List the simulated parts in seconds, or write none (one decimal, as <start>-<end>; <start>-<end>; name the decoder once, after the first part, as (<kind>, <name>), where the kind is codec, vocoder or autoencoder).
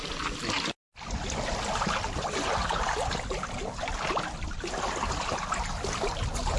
none